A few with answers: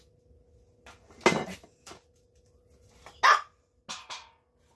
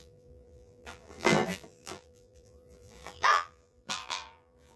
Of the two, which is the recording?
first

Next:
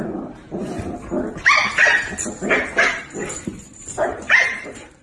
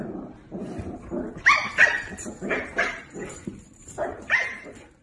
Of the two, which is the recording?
first